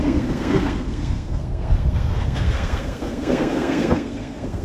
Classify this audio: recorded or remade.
remade